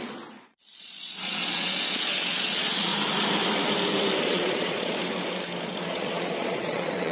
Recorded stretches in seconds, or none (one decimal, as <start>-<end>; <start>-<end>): 2.9-4.2; 5.0-5.9